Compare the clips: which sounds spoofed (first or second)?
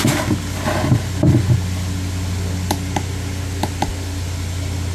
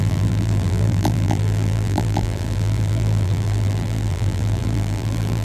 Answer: second